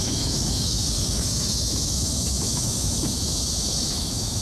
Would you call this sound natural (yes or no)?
no